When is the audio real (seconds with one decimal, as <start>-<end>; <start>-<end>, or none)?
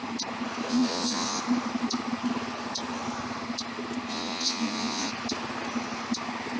0.0-0.7; 1.4-4.1; 5.1-6.6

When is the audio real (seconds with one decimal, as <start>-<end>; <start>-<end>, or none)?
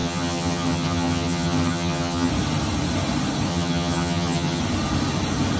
2.3-3.5; 4.6-5.6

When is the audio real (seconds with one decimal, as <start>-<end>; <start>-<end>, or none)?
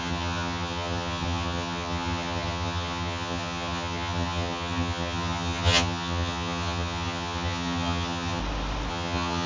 8.4-8.9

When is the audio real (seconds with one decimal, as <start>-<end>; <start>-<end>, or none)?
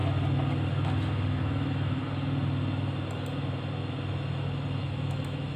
0.0-1.4; 2.0-4.8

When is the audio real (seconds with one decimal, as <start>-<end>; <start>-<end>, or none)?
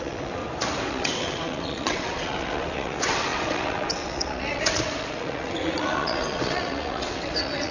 0.4-0.9